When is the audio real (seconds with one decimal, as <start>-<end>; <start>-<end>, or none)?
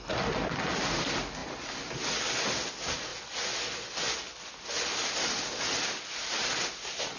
0.0-1.4; 2.7-7.2